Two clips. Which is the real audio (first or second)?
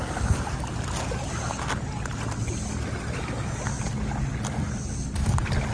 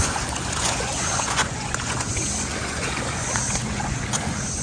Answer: first